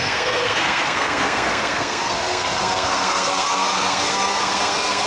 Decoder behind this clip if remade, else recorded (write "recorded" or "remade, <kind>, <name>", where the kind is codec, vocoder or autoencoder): remade, codec, SNAC